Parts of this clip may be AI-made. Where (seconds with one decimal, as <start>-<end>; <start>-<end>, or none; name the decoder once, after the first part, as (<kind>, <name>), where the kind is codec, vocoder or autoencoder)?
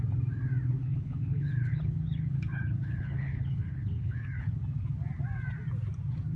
0.8-4.6 (codec, HILCodec)